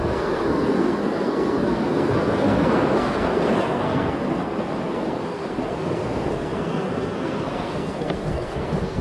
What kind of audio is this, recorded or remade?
remade